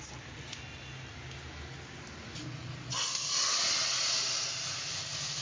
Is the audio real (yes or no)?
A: yes